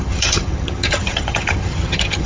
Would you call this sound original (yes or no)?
no